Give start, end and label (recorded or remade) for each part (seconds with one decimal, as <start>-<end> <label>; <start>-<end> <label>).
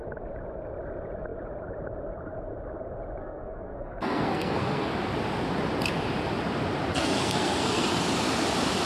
0.0-3.2 recorded; 3.2-4.9 remade; 4.9-6.9 recorded; 6.9-8.0 remade; 8.0-8.9 recorded